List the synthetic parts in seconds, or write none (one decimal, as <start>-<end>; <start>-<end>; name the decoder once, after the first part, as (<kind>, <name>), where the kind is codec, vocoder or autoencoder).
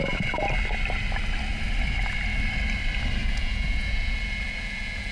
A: 3.2-5.1 (vocoder, Vocos)